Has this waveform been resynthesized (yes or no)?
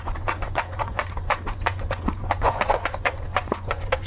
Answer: yes